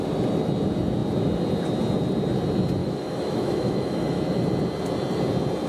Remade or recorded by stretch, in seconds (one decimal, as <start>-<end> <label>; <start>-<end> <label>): 0.0-2.8 recorded; 2.8-4.2 remade; 4.2-5.7 recorded